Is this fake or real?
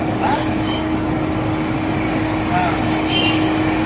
fake